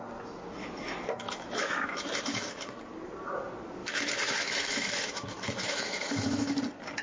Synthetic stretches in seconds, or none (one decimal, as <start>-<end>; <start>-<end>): 0.6-2.8; 3.8-6.6